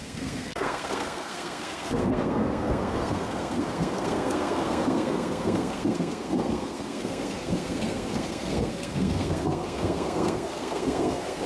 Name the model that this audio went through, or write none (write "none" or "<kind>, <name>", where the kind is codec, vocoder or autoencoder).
codec, SNAC